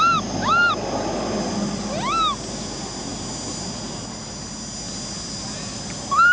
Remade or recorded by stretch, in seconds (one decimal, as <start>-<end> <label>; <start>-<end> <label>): 0.0-6.3 recorded